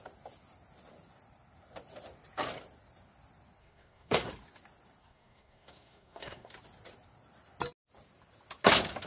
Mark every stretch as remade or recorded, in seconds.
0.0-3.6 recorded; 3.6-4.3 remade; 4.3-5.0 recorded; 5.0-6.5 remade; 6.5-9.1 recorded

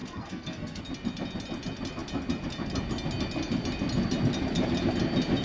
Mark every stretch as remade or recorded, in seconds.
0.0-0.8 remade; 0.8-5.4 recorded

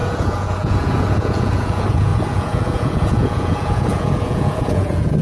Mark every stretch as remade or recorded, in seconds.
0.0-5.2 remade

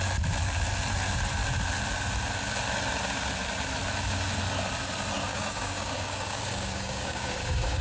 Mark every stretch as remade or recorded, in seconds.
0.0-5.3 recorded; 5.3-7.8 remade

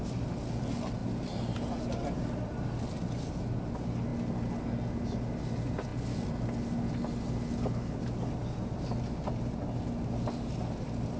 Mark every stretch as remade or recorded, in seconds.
0.0-11.2 recorded

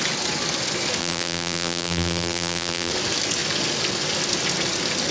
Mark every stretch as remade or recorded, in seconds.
0.0-1.0 recorded; 1.0-2.9 remade; 2.9-5.1 recorded

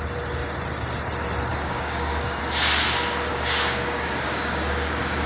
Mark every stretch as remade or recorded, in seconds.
0.0-1.5 recorded; 1.5-2.4 remade; 2.4-3.3 recorded; 3.3-5.3 remade

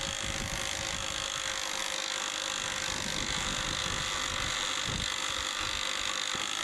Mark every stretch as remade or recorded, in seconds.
0.0-6.6 recorded